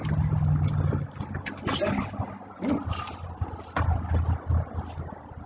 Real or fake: real